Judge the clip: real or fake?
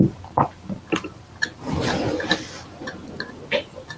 real